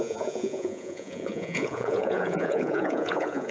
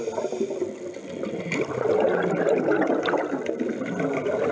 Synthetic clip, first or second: first